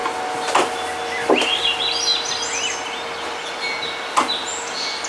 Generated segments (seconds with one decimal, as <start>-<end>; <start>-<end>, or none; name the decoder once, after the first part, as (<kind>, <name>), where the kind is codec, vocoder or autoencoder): none